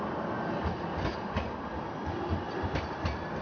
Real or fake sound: real